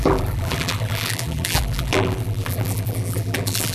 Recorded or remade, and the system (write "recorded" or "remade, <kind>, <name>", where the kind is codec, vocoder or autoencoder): remade, vocoder, BigVGAN v2